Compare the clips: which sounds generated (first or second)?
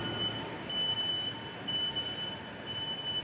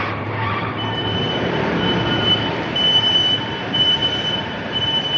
second